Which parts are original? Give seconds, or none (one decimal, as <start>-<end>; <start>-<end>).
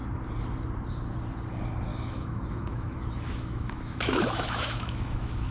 0.0-1.9